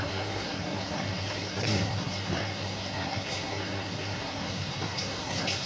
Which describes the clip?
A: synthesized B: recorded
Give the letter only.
A